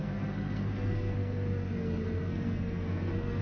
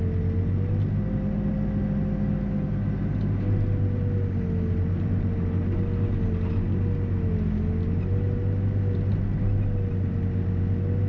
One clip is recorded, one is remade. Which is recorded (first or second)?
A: second